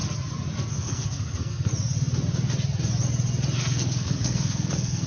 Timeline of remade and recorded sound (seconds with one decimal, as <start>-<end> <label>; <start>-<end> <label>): 0.0-0.7 recorded; 0.7-1.7 remade; 1.7-3.6 recorded; 3.6-5.1 remade